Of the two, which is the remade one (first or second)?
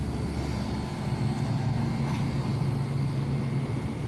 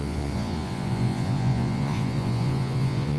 second